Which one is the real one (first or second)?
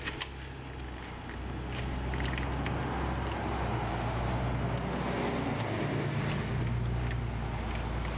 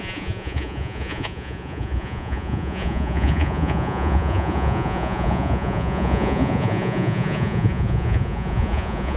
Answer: first